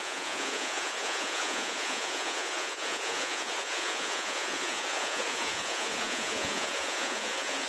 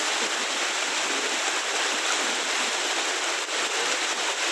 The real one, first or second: second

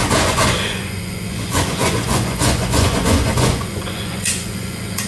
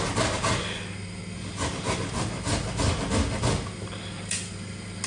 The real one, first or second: second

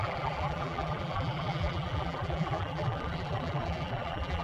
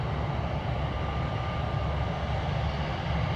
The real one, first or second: second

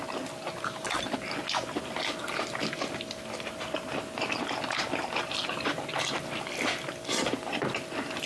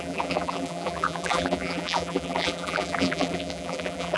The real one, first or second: first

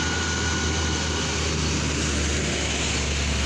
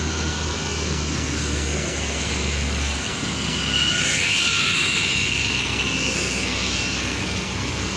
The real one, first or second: first